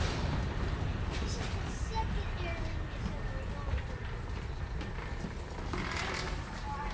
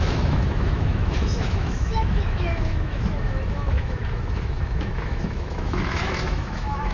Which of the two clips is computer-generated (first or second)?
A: second